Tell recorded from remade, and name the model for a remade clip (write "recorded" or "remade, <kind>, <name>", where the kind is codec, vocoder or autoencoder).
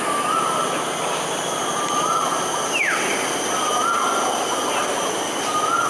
recorded